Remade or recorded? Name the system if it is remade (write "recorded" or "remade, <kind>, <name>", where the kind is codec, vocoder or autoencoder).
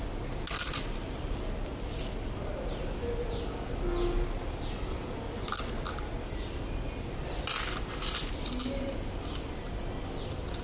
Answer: recorded